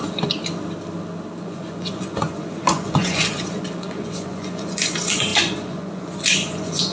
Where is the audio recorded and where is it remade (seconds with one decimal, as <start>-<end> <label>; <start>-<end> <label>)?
0.0-1.4 recorded; 1.4-6.9 remade